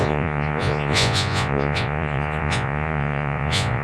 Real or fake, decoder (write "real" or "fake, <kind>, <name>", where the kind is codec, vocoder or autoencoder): fake, vocoder, Vocos